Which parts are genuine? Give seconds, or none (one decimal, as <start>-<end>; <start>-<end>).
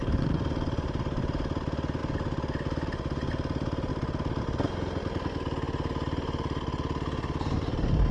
0.0-8.1